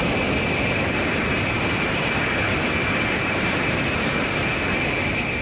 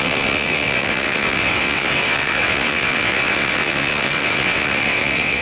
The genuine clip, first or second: first